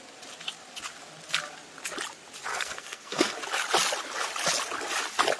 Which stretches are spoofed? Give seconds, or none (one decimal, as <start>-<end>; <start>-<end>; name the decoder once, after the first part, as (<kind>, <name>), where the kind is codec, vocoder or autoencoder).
2.5-3.4 (codec, SNAC)